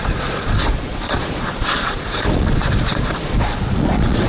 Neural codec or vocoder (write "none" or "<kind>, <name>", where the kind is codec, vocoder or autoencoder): vocoder, Vocos